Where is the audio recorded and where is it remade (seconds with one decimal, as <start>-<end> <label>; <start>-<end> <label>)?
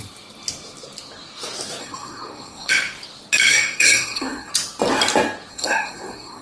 0.0-1.8 recorded; 1.8-2.7 remade; 2.7-3.5 recorded; 3.5-4.5 remade; 4.5-5.5 recorded; 5.5-6.4 remade